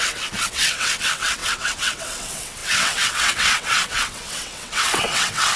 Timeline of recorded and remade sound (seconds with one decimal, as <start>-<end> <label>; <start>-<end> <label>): 0.0-5.6 remade